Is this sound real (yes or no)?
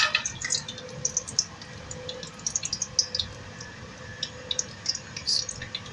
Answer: yes